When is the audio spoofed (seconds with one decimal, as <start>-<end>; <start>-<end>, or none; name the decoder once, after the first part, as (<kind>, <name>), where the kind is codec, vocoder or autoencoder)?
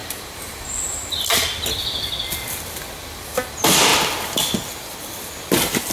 none